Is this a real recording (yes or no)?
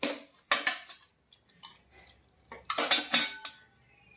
yes